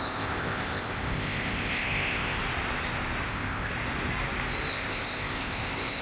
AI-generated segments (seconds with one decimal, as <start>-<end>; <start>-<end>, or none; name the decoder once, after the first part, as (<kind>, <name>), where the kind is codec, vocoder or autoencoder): 0.0-2.4 (codec, ZipCodec); 3.3-3.7; 4.7-6.0